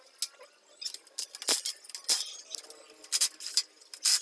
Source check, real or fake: real